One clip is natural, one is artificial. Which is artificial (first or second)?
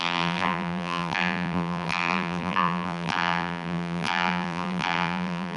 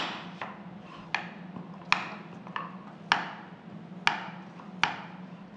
first